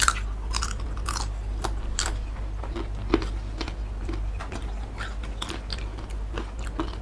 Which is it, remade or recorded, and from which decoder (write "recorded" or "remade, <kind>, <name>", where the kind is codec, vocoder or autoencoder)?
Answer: recorded